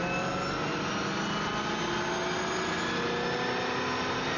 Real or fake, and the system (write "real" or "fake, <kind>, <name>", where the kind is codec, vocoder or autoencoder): real